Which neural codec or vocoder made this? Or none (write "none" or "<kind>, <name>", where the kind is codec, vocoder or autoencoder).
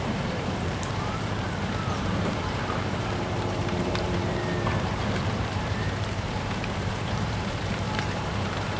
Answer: vocoder, BigVGAN v2